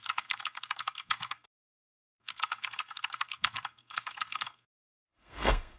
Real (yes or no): no